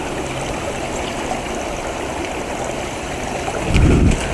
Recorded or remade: recorded